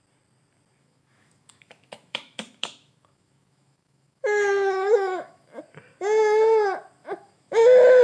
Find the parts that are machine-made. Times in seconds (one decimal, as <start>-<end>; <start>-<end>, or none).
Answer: 0.8-5.6; 7.0-8.0